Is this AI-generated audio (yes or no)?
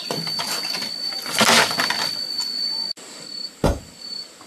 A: no